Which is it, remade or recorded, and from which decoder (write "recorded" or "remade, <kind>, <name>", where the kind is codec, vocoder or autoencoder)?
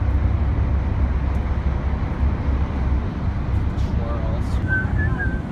recorded